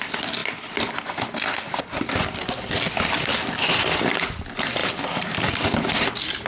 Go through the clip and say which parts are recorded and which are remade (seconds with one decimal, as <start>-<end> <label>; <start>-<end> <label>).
0.0-6.5 recorded